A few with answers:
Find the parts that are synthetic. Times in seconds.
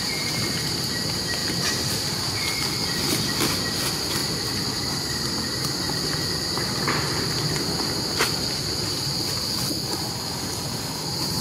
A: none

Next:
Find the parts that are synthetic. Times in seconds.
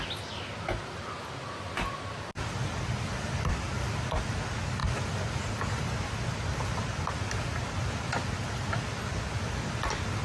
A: none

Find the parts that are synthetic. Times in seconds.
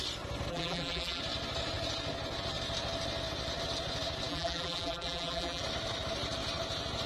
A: 0.5-1.2 (vocoder, BigVGAN v2); 4.3-5.6